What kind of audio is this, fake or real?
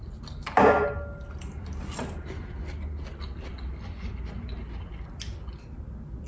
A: real